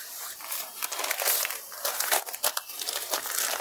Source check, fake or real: real